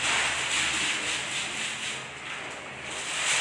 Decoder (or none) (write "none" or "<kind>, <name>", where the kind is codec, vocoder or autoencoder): none